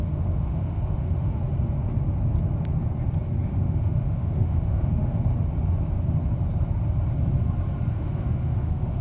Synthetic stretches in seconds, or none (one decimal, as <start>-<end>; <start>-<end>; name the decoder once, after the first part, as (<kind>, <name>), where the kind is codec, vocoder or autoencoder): 0.0-1.3 (autoencoder, DAC-VAE); 3.5-5.3; 7.9-9.0